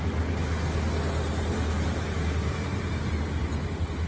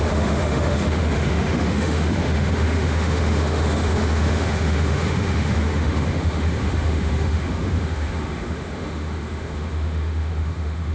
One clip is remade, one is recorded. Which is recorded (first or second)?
first